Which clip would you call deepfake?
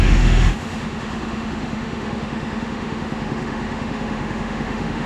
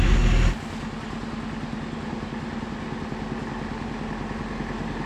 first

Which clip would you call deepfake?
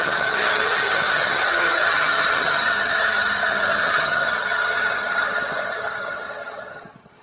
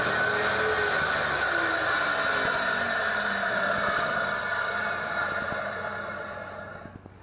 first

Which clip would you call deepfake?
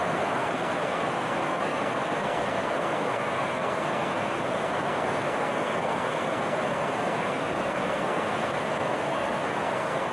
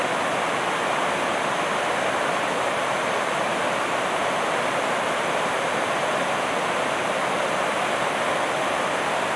first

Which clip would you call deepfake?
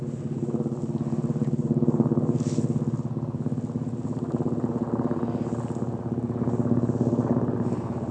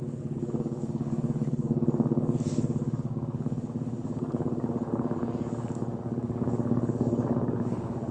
second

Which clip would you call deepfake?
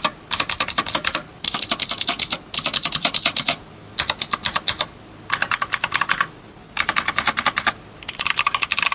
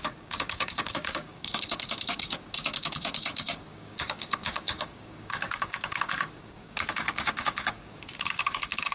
second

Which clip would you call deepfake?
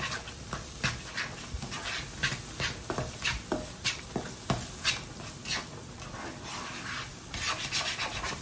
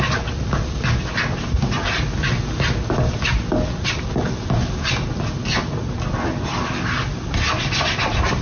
first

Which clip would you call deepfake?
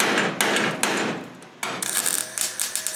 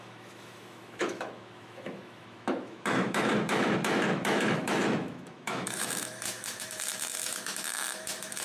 second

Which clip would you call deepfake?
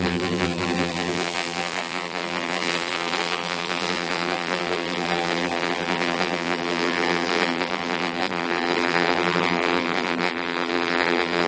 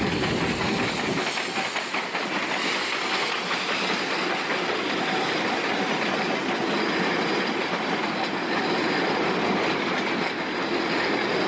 first